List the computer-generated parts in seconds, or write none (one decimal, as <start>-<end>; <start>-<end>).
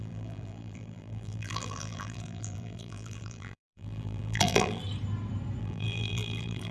0.0-4.8; 5.6-6.7